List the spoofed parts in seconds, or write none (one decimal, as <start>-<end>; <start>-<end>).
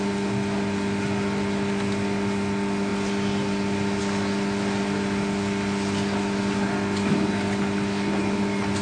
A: none